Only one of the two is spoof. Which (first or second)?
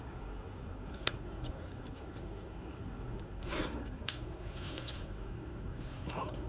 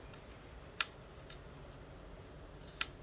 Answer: first